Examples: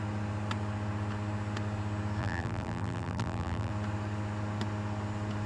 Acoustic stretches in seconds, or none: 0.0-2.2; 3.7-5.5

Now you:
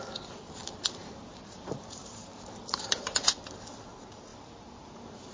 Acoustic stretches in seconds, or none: 0.0-0.6; 3.4-4.3

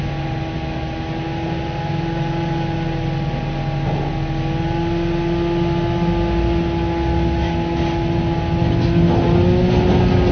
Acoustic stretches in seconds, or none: 0.0-10.3

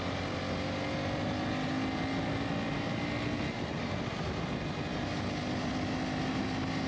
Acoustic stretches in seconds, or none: 0.0-6.9